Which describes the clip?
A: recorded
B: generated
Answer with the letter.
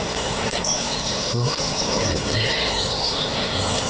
B